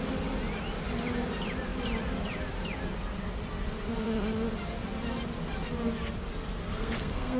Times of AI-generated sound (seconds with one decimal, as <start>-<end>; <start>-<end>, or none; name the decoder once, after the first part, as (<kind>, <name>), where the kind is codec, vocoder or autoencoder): 6.6-7.4 (codec, SNAC)